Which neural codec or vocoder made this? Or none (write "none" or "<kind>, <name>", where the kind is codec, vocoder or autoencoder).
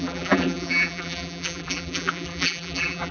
vocoder, BigVGAN v2